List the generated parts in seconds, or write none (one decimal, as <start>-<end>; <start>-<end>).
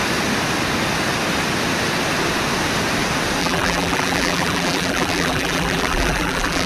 3.4-6.7